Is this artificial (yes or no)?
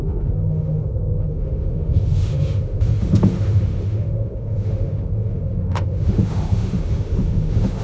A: yes